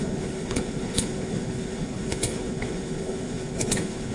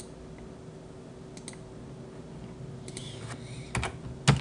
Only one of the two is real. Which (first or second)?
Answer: second